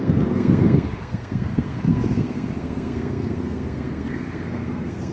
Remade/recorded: remade